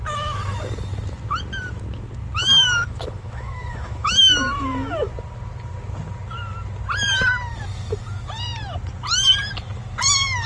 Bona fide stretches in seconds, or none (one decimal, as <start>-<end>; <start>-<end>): 0.0-2.4; 5.1-10.5